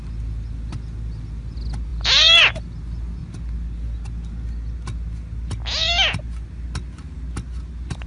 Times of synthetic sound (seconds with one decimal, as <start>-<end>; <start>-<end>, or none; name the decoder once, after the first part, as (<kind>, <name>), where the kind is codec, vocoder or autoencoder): none